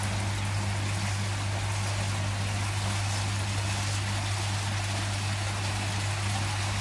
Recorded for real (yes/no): yes